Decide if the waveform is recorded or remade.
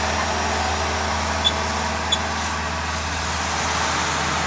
recorded